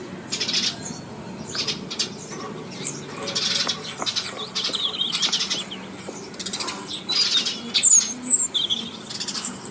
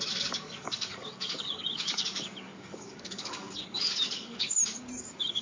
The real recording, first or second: first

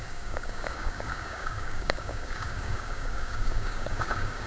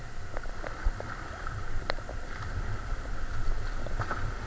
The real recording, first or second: second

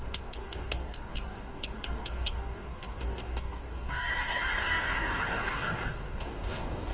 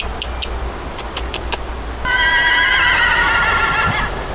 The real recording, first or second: second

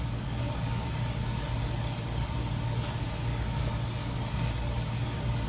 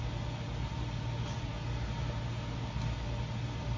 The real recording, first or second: second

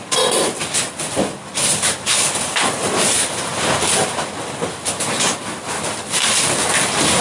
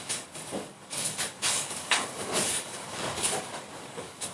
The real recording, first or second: first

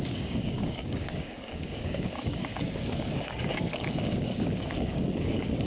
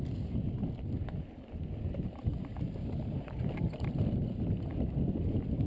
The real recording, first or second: second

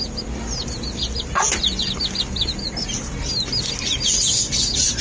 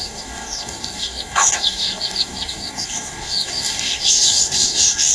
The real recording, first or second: first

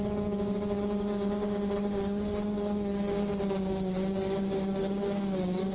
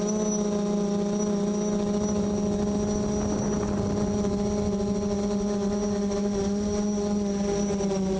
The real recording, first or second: second